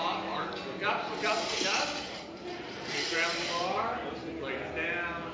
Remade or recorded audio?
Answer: recorded